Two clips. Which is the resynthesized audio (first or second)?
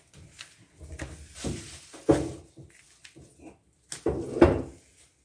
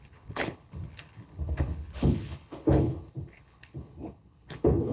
second